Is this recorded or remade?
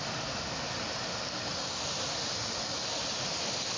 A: recorded